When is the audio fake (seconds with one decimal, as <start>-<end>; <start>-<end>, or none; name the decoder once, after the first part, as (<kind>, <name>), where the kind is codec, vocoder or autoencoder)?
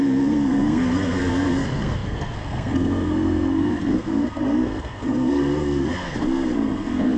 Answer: 0.0-7.2 (codec, SNAC)